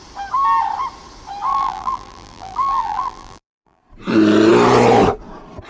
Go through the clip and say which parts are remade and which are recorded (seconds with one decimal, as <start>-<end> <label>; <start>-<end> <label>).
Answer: 0.0-1.5 recorded; 1.5-3.8 remade; 3.8-5.7 recorded